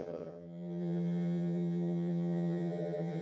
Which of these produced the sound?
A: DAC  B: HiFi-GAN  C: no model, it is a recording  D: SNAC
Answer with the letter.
B